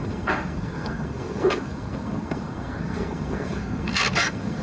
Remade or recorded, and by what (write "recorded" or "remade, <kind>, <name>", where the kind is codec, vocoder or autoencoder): remade, codec, SNAC